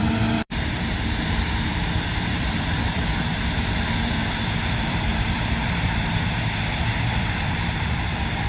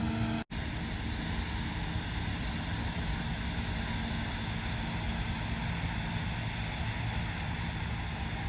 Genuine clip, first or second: second